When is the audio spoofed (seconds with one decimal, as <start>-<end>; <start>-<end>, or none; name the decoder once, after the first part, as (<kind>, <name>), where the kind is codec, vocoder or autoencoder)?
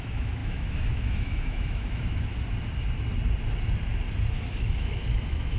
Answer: 0.0-2.3 (autoencoder, DAC-VAE); 4.3-5.6